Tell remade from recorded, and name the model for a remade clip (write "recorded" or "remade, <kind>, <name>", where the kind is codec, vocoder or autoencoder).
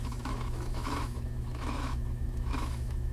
remade, autoencoder, DAC-VAE